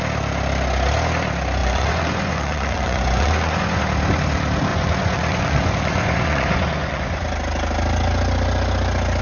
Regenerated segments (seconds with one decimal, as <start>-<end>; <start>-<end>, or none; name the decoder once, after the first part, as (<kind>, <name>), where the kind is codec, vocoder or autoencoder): 1.6-3.8 (vocoder, Vocos); 4.7-7.2